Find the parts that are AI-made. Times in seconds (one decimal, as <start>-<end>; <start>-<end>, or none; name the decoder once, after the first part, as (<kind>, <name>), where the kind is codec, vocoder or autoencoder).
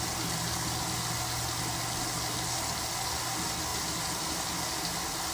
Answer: none